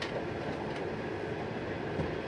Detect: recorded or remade recorded